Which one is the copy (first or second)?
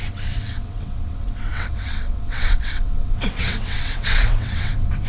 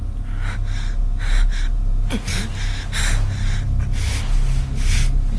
first